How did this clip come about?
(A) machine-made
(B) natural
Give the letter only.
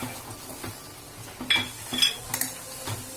B